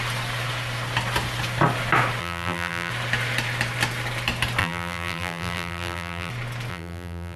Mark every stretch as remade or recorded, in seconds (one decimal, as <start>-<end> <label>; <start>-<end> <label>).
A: 0.0-2.2 recorded; 2.2-2.9 remade; 2.9-4.6 recorded; 4.6-6.3 remade; 6.3-6.7 recorded; 6.7-7.4 remade